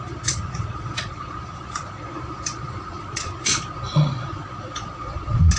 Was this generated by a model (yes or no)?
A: yes